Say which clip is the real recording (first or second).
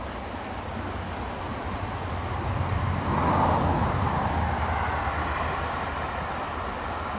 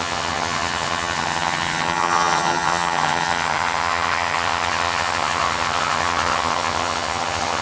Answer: first